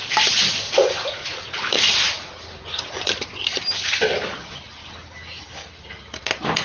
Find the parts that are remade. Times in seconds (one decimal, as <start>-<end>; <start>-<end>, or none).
none